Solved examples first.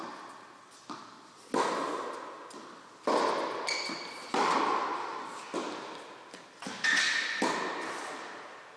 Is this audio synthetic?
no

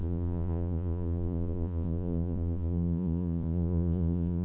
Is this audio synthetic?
yes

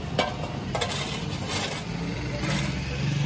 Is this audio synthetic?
no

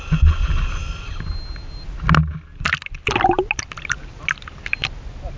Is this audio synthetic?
no